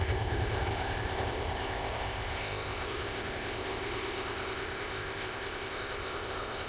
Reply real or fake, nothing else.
fake